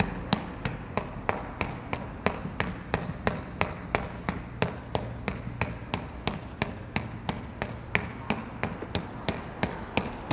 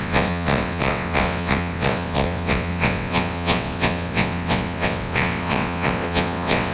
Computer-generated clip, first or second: second